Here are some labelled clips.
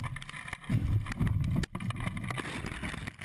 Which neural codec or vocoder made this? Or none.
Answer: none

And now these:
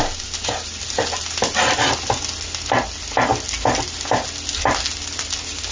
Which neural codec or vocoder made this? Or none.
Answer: none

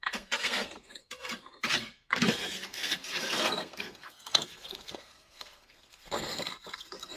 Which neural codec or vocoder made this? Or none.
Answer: codec, SNAC